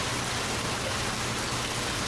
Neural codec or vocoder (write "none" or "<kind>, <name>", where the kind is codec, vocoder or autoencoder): none